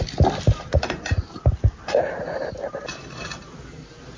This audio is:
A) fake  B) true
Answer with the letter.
B